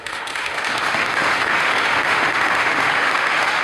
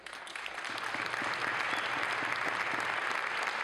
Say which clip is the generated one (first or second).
first